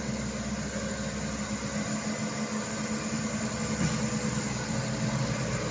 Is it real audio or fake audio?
real